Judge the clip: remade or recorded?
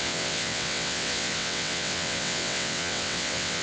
remade